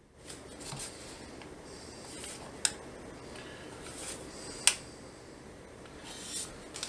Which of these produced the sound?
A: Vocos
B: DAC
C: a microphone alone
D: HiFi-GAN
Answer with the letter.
C